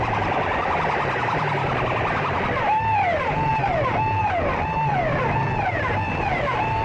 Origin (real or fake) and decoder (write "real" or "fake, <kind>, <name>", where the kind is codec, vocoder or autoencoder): real